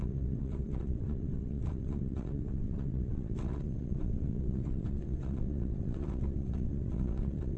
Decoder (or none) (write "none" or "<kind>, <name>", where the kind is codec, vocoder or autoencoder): vocoder, WaveNeXt